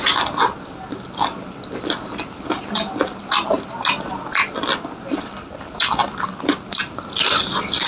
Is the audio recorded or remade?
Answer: recorded